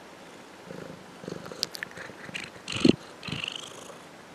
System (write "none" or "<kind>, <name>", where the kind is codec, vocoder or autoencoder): none